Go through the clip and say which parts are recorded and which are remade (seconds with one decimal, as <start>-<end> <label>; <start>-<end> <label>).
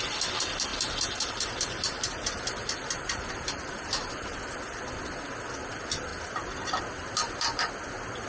0.0-0.7 recorded; 0.7-4.4 remade; 4.4-6.1 recorded; 6.1-6.8 remade; 6.8-8.3 recorded